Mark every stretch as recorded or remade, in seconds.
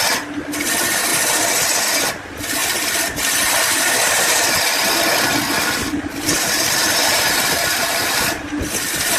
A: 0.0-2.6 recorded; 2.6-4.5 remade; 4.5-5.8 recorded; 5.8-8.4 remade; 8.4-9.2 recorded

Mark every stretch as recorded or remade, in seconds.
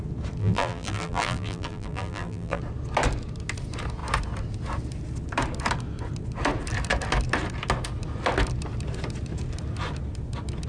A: 0.0-0.4 recorded; 0.4-2.6 remade; 2.6-10.7 recorded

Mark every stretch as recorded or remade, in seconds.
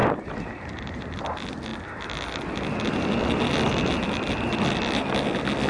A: 0.0-1.2 remade; 1.2-5.7 recorded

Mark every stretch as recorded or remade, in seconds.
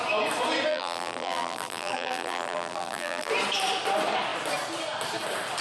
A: 0.0-0.7 recorded; 0.7-3.3 remade; 3.3-5.6 recorded